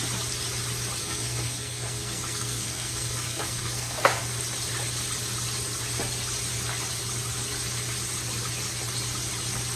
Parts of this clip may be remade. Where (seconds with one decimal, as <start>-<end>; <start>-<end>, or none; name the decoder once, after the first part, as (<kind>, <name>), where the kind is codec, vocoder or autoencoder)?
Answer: 1.0-4.2 (codec, SNAC)